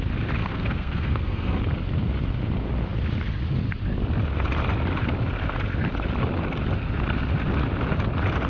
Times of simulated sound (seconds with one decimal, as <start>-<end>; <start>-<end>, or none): 0.4-1.6